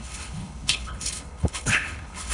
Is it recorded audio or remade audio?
remade